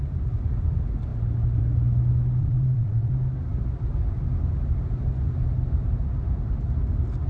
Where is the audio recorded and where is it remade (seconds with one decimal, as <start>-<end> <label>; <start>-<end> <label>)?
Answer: 0.0-2.4 recorded; 2.4-3.1 remade; 3.1-7.3 recorded